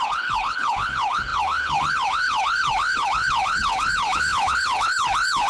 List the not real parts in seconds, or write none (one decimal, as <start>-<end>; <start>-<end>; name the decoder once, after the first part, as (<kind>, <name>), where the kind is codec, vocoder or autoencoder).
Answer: 0.0-5.5 (codec, HILCodec)